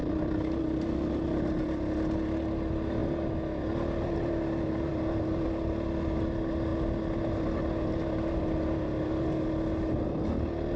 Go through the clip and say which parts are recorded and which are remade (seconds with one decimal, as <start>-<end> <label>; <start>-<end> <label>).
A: 0.0-10.8 recorded